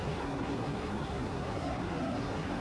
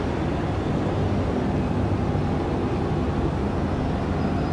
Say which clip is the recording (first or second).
second